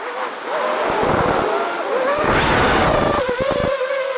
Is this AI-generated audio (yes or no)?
no